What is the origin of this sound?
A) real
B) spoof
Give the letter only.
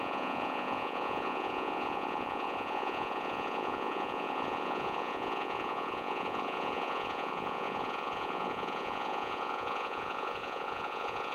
B